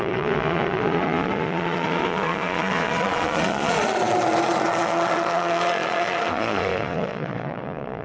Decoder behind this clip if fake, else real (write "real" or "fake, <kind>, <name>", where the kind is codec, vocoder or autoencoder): fake, vocoder, Vocos